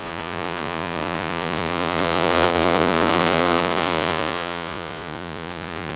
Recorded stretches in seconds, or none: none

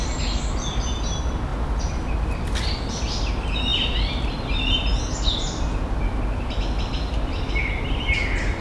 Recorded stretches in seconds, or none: 0.0-8.6